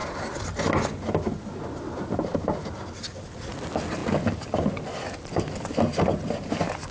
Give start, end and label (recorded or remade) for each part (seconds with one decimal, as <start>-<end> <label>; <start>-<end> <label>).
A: 0.0-6.9 recorded